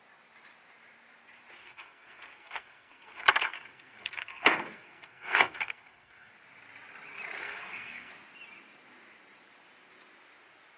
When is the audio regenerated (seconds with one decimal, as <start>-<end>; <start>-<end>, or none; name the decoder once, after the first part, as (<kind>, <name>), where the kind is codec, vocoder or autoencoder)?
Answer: 1.6-6.3 (codec, SNAC); 7.4-8.1